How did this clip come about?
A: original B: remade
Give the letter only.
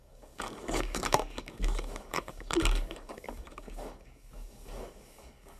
B